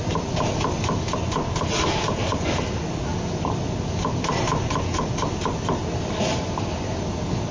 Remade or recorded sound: recorded